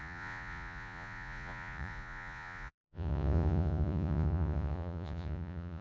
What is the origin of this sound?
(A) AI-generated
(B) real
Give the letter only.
A